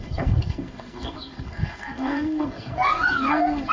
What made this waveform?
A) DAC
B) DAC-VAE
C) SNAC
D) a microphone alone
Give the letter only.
C